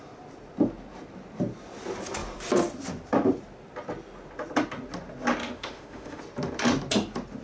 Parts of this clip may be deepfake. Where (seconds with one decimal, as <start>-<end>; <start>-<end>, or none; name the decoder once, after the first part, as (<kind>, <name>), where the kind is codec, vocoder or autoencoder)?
5.4-6.2 (autoencoder, DAC-VAE)